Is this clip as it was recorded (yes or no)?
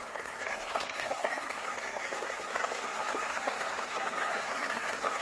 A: no